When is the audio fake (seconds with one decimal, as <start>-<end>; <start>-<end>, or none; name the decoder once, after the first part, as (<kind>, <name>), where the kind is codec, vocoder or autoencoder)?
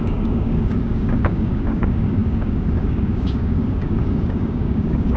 0.0-5.2 (codec, DAC)